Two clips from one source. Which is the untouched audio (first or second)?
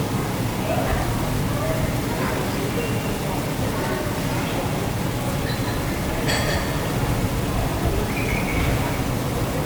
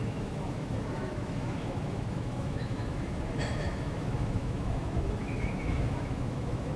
first